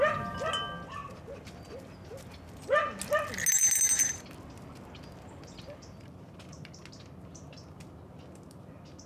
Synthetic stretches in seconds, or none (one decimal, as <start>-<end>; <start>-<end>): none

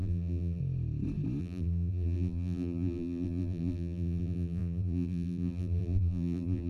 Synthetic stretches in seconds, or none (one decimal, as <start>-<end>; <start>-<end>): 0.0-0.6; 1.4-6.7

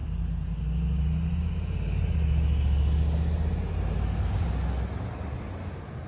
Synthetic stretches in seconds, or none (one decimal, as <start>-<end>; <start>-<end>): none